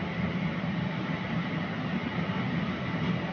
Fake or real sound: real